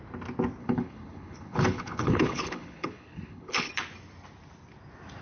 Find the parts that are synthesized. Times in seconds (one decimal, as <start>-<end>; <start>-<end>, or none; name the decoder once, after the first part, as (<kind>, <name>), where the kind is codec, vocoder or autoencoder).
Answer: 0.6-3.7 (codec, HILCodec)